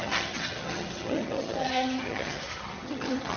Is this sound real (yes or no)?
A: no